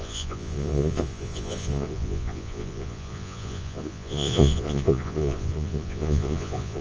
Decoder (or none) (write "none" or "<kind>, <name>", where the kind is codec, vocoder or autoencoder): vocoder, Vocos